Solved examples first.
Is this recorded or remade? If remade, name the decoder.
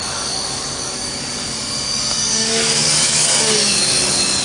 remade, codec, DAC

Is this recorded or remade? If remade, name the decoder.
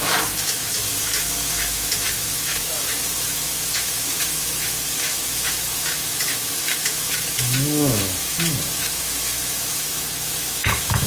remade, autoencoder, DAC-VAE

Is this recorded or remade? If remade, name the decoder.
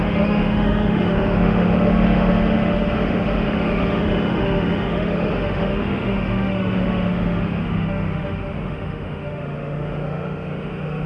remade, autoencoder, DAC-VAE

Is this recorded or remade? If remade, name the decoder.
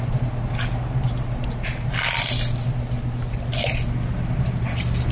recorded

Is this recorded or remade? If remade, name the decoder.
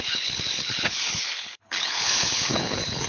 remade, codec, HILCodec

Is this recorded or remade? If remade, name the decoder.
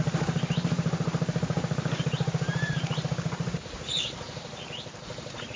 remade, vocoder, BigVGAN v2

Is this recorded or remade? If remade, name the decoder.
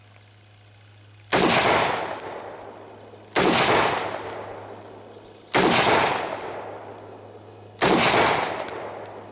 recorded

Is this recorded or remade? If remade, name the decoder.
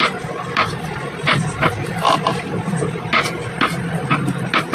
recorded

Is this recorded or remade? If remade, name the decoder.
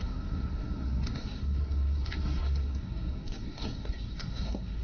remade, codec, SNAC